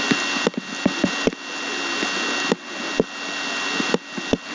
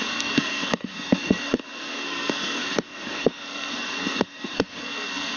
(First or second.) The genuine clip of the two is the first